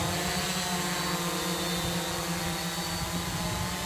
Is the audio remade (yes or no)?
no